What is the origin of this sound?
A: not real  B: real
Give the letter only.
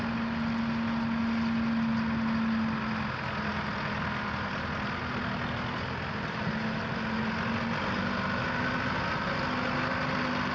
B